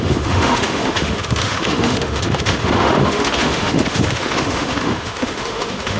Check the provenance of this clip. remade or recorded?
remade